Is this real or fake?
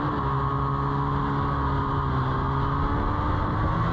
real